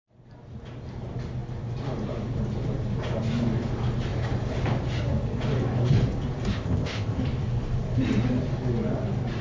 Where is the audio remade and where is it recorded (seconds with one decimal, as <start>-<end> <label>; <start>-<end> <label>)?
0.0-6.5 recorded; 6.5-7.2 remade; 7.2-9.4 recorded